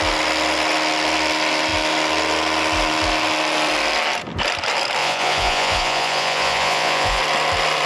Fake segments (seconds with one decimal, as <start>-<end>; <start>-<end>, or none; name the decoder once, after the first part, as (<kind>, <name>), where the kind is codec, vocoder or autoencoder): 5.0-7.2 (vocoder, Vocos)